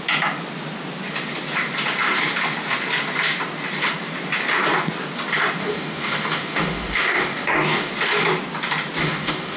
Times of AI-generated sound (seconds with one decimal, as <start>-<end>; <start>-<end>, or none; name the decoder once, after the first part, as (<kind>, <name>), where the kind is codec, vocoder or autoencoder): 5.6-7.9 (codec, DAC); 9.0-9.6